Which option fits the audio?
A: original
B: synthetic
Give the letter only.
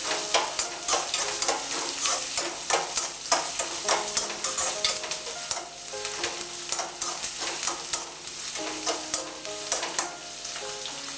A